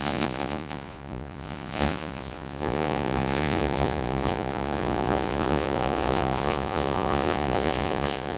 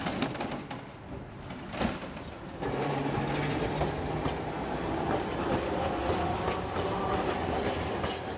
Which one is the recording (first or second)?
second